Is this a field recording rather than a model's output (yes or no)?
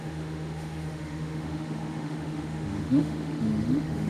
no